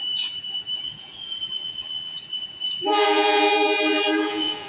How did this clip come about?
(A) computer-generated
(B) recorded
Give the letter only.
A